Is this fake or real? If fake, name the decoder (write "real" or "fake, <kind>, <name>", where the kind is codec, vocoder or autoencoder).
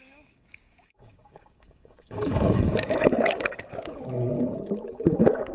fake, codec, DAC